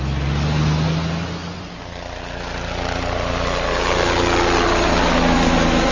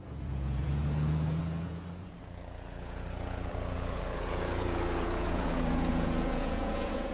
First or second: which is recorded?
first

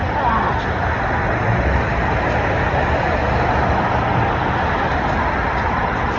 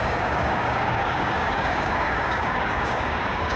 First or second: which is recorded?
first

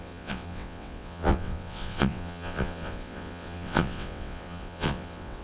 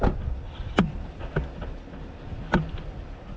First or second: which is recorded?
second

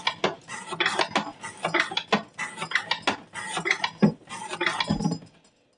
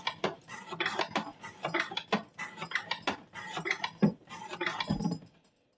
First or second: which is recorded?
first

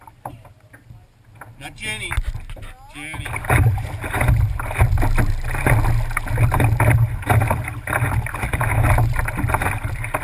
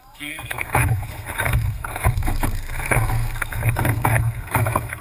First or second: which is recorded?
first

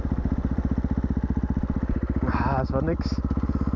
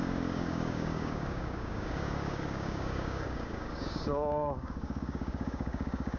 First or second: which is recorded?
first